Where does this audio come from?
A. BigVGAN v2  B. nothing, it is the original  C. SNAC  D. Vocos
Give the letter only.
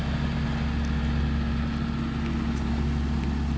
B